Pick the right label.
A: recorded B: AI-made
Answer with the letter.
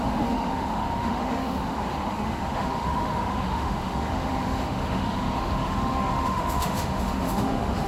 B